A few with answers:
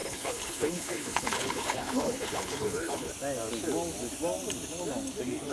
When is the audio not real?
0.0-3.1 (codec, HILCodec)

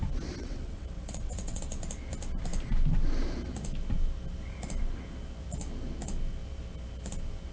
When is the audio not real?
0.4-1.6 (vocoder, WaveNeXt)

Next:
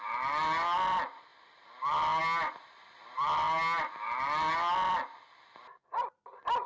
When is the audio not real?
none

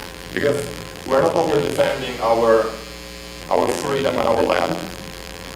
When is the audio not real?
0.0-1.9 (vocoder, BigVGAN v2); 3.4-5.6

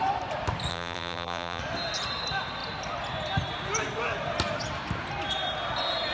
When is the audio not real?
0.7-1.6 (vocoder, BigVGAN v2)

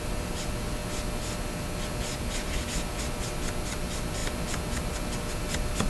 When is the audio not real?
none

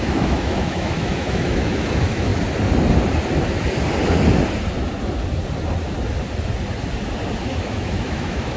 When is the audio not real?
0.0-2.3 (autoencoder, DAC-VAE); 7.4-8.6

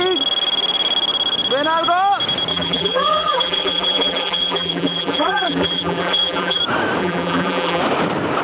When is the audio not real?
2.5-6.6 (vocoder, BigVGAN v2); 7.0-7.8